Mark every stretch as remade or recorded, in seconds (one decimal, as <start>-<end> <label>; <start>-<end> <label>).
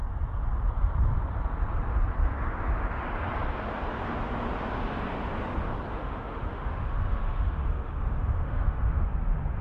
0.0-5.9 recorded; 5.9-9.1 remade; 9.1-9.6 recorded